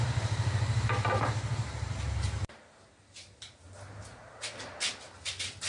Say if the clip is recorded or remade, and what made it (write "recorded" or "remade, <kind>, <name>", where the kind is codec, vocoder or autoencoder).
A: recorded